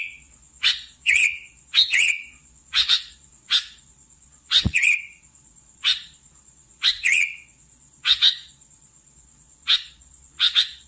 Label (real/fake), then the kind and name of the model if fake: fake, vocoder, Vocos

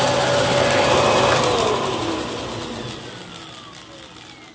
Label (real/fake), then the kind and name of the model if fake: real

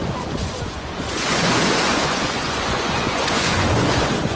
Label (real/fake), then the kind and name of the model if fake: fake, vocoder, Vocos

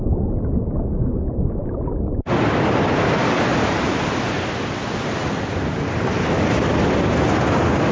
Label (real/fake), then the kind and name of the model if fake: real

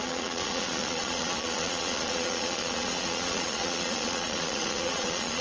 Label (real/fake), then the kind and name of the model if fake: fake, vocoder, Vocos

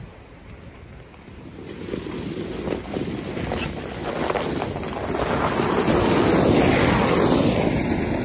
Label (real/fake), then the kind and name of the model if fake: real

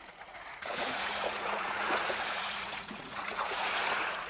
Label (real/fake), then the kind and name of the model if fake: fake, vocoder, Vocos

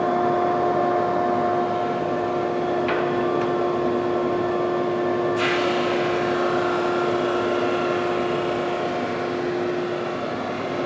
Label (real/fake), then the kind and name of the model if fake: real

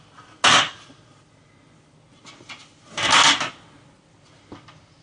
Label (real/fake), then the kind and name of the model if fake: real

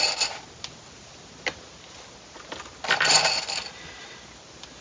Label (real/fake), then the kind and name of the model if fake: real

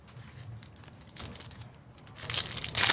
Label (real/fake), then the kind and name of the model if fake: real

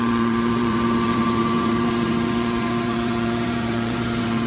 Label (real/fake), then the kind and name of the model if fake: fake, vocoder, Vocos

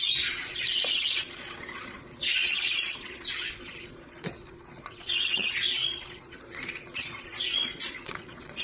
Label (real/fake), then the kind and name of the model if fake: fake, vocoder, Vocos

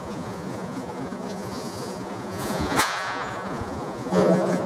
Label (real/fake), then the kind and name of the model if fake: fake, vocoder, Vocos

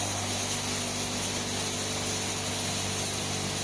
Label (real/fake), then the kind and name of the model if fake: real